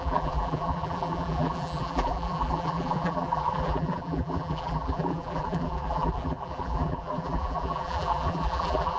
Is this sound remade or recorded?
remade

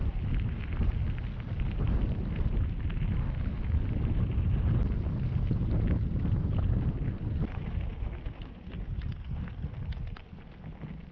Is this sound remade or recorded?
recorded